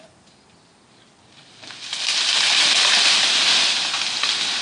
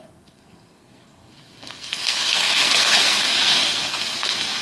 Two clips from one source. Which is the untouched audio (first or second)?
first